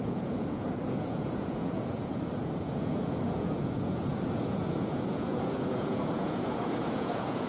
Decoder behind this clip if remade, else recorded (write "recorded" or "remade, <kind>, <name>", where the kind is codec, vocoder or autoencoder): remade, vocoder, Vocos